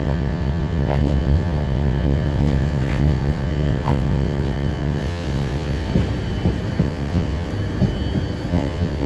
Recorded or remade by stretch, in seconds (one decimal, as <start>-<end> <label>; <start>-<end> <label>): 0.0-5.9 remade; 5.9-6.8 recorded; 6.8-7.5 remade; 7.5-8.5 recorded; 8.5-9.1 remade